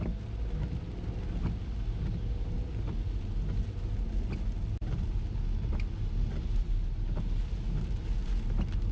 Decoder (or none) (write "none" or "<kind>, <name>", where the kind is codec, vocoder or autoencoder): none